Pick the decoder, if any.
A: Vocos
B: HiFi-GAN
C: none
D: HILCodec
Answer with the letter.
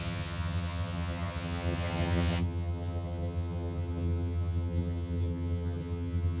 B